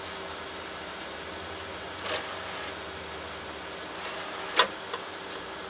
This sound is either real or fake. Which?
real